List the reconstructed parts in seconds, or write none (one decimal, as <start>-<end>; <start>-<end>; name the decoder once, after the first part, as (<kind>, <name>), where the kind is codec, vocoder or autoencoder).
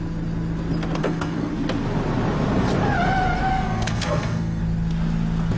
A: 1.0-1.5 (codec, SNAC); 3.5-4.6